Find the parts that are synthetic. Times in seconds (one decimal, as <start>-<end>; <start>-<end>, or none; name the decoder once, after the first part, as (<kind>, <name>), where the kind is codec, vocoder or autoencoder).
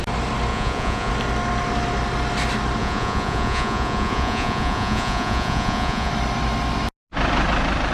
0.5-1.1 (vocoder, Vocos); 2.8-6.1